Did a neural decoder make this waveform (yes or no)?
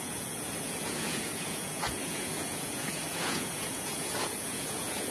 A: yes